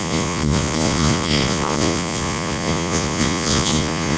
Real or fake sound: fake